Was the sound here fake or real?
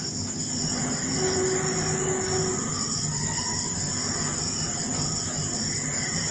real